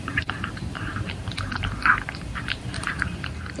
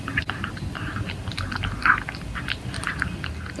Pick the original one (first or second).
second